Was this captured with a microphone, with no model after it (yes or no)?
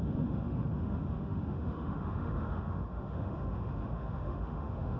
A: no